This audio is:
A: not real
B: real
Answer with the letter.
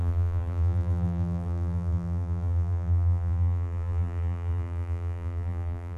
A